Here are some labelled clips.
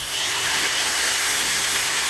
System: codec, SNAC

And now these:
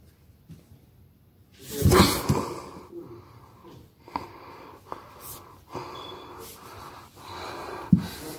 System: none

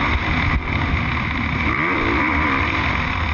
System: none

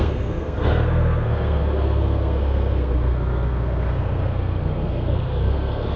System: codec, SNAC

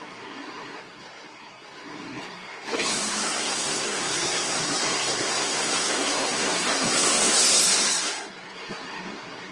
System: codec, SNAC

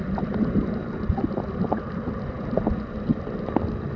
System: none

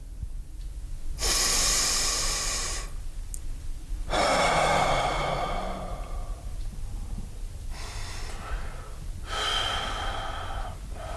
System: none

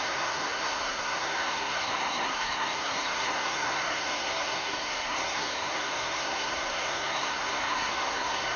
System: codec, SNAC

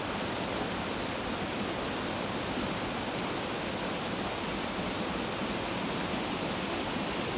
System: none